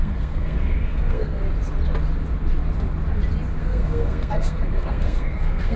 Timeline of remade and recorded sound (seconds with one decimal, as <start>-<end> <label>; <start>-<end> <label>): 0.0-1.4 remade; 1.4-3.6 recorded; 3.6-5.8 remade